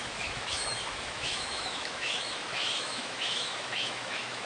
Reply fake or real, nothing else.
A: fake